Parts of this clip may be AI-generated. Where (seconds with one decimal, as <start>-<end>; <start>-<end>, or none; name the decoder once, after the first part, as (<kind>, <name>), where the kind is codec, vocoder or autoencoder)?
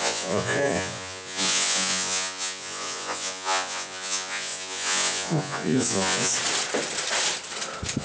0.0-6.3 (vocoder, Vocos)